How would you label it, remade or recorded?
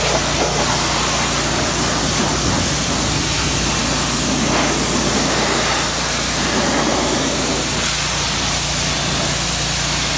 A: recorded